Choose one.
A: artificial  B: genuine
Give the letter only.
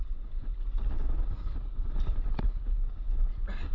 B